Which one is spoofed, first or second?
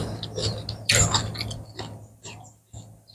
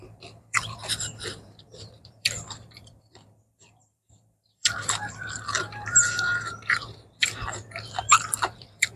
second